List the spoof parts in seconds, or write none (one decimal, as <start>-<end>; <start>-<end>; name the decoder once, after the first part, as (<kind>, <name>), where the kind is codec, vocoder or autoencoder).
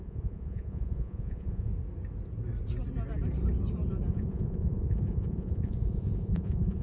0.0-1.7 (vocoder, Vocos); 4.1-6.8